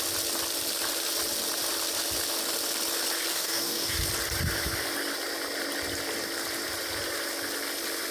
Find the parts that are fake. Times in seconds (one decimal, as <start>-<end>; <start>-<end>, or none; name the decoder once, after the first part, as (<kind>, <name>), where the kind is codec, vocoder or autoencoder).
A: 3.3-4.0 (codec, DAC)